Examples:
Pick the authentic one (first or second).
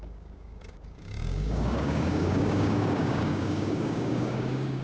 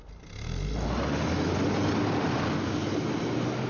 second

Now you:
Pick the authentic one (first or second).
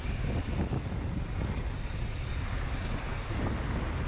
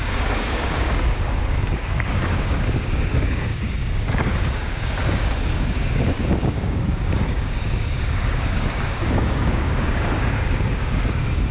first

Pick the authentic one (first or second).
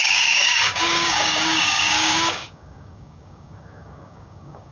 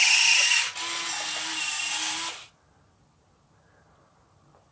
second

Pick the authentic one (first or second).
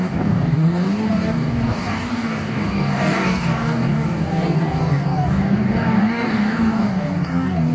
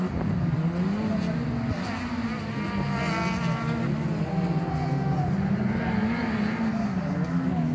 second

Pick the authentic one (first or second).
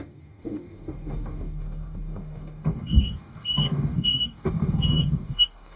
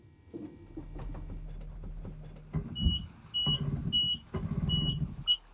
second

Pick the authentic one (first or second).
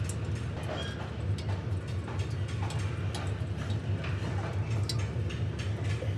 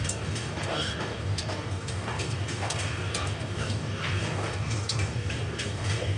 first